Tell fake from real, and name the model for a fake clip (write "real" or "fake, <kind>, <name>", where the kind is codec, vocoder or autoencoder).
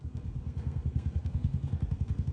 fake, codec, SNAC